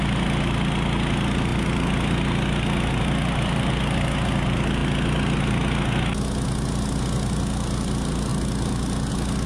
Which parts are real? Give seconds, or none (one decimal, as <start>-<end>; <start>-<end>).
0.0-9.5